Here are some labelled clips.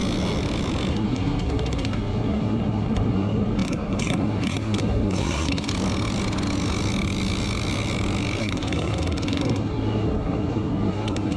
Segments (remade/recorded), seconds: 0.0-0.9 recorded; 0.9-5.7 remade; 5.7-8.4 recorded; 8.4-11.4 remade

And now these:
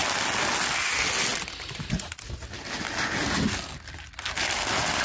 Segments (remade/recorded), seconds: 0.0-5.0 recorded

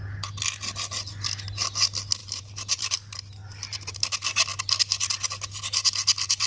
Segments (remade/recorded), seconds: 0.0-2.2 recorded; 2.2-4.0 remade; 4.0-6.5 recorded